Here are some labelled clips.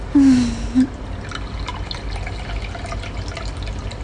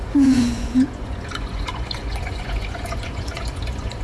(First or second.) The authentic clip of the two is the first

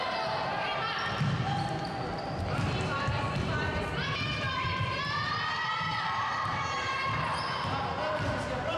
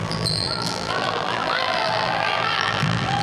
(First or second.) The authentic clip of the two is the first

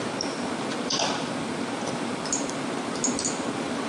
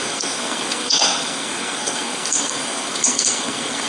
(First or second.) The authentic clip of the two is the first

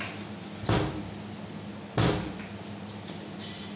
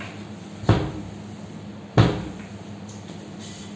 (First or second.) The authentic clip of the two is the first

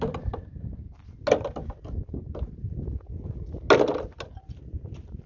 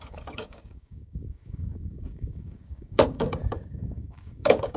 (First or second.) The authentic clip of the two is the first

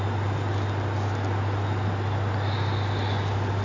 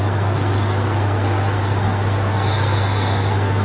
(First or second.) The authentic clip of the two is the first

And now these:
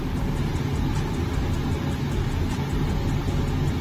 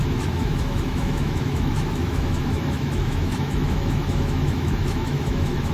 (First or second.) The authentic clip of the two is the first